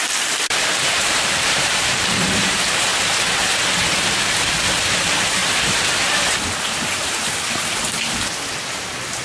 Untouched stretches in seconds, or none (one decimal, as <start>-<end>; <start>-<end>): 2.9-4.0; 5.4-6.4; 7.2-9.2